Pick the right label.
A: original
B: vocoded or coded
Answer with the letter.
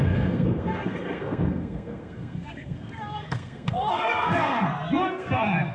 B